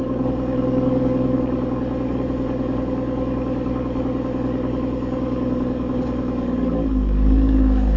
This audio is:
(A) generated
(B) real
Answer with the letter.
A